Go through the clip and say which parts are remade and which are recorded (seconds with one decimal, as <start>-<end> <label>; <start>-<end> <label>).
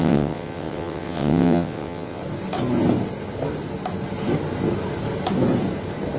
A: 0.0-2.2 remade; 2.2-6.2 recorded